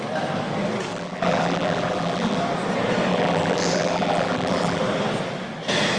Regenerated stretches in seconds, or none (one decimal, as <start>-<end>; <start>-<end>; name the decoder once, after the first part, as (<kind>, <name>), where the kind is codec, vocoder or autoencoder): 0.9-2.4 (vocoder, BigVGAN v2); 3.1-4.8